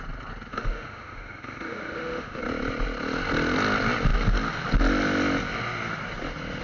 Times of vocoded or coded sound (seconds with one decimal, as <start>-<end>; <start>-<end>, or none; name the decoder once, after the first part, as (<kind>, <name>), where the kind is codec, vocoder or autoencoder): 0.5-2.4 (autoencoder, DAC-VAE)